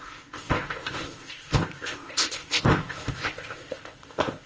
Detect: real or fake fake